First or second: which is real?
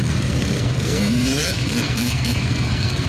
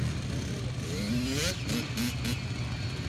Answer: second